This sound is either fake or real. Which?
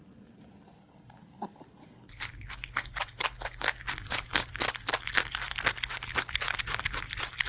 real